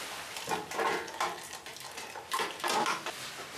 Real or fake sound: real